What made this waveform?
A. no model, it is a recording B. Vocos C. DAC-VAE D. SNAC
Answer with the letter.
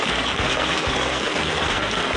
D